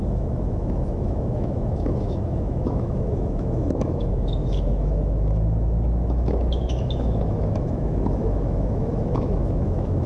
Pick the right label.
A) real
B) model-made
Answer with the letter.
B